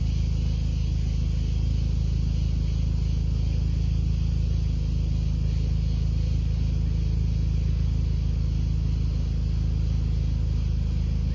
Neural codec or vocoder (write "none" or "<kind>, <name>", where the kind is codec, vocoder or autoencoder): none